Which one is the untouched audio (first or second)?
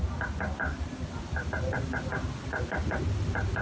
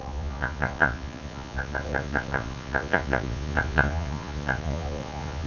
first